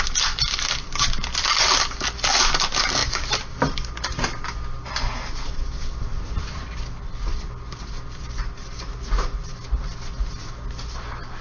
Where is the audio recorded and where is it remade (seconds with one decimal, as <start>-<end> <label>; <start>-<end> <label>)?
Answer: 0.0-11.4 recorded